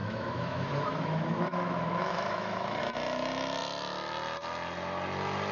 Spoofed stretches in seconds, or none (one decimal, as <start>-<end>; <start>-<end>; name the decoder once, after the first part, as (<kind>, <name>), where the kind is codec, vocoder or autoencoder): 0.0-2.8 (autoencoder, DAC-VAE)